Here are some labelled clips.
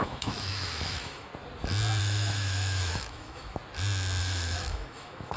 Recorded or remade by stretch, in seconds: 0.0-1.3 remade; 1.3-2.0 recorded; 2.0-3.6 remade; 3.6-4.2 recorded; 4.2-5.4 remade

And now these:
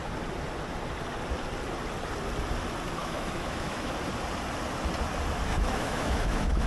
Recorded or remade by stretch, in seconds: 0.0-3.0 recorded; 3.0-3.9 remade; 3.9-5.5 recorded; 5.5-6.7 remade

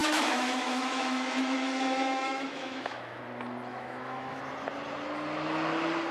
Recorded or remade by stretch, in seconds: 0.0-3.2 remade; 3.2-3.7 recorded; 3.7-4.4 remade; 4.4-6.1 recorded

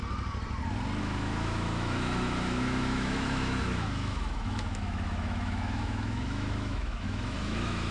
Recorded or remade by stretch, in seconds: 0.0-1.0 recorded; 1.0-7.9 remade